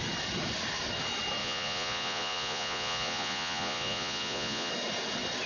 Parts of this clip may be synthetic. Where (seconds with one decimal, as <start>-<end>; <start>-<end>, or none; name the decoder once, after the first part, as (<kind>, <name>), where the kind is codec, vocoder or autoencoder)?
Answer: 1.4-4.7 (vocoder, Vocos)